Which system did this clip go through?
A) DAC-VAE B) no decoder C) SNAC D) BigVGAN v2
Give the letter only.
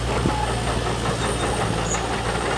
B